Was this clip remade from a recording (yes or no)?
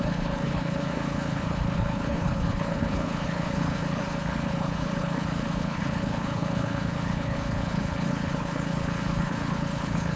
yes